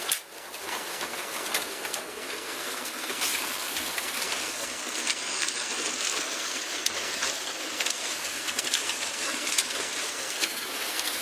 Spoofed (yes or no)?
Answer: yes